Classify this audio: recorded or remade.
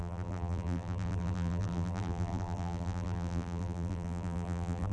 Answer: remade